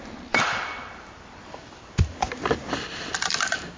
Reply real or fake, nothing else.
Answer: fake